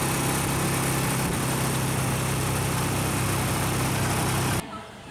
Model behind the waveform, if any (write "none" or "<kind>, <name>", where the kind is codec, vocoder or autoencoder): none